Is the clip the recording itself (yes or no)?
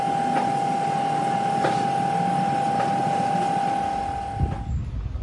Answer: yes